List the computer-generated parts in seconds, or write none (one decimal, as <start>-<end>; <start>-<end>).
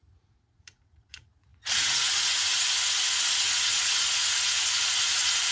0.0-5.5